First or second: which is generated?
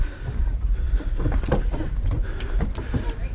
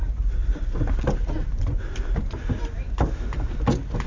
first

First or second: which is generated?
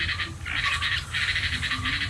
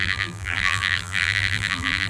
second